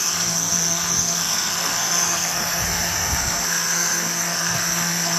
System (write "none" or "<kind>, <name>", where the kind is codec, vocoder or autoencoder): codec, SNAC